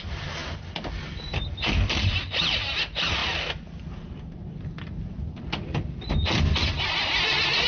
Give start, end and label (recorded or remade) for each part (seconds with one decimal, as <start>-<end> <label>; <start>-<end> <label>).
0.0-7.7 recorded